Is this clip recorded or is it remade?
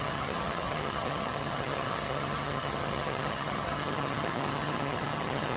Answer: remade